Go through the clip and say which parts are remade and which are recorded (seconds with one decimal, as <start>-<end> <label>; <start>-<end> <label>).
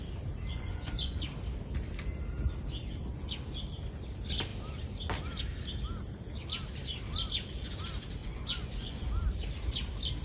0.0-0.5 recorded; 0.5-1.2 remade; 1.2-8.2 recorded; 8.2-9.1 remade; 9.1-10.2 recorded